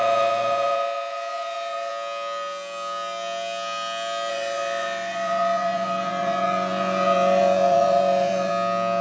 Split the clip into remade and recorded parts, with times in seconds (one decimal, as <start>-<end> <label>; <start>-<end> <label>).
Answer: 0.0-1.9 remade; 1.9-4.3 recorded; 4.3-8.5 remade; 8.5-9.0 recorded